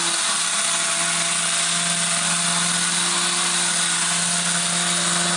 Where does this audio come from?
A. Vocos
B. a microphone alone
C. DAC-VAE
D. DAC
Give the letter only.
B